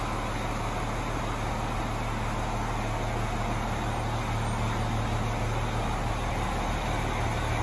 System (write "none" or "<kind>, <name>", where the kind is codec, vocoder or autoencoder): none